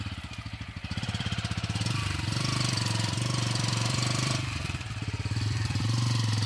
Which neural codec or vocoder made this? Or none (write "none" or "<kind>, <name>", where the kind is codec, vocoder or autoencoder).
vocoder, BigVGAN v2